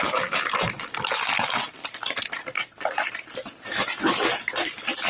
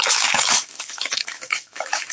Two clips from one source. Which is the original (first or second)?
first